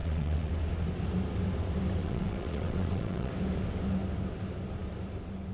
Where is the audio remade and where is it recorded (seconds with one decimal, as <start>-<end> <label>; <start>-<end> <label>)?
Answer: 0.0-0.5 remade; 0.5-2.0 recorded; 2.0-3.3 remade; 3.3-5.5 recorded